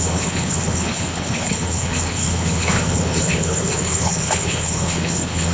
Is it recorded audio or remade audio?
remade